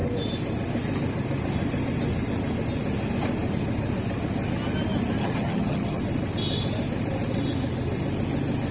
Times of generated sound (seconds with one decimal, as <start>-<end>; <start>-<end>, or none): 5.2-6.0